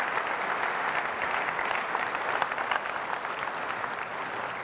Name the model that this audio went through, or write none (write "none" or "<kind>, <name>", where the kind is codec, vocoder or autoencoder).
none